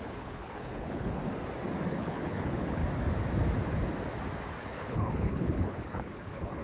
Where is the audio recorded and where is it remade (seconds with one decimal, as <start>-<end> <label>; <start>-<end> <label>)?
0.0-1.2 remade; 1.2-1.9 recorded; 1.9-2.8 remade; 2.8-4.6 recorded; 4.6-6.6 remade